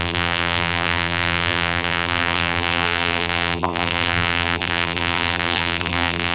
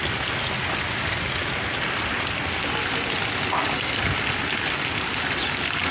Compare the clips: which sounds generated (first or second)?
first